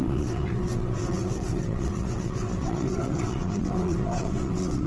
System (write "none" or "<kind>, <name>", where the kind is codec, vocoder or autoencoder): vocoder, WaveNeXt